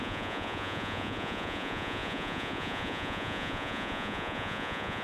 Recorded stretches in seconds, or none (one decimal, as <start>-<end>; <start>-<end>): none